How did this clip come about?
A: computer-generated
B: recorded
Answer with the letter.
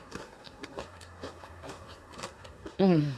A